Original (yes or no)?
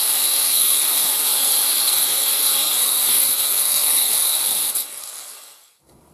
no